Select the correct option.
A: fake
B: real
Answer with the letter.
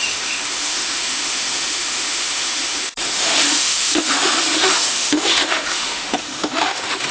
A